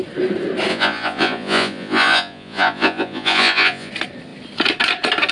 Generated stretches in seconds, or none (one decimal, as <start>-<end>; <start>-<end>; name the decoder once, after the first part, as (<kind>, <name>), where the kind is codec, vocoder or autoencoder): 0.7-3.9 (vocoder, Vocos)